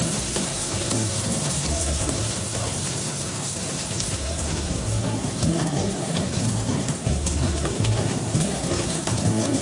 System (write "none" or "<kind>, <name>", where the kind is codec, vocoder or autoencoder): codec, SNAC